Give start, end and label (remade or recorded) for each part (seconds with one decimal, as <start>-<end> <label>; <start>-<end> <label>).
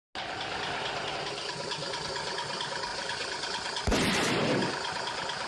0.0-5.5 recorded